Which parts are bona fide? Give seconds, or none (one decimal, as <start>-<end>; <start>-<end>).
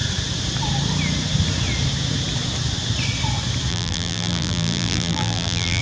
0.0-3.7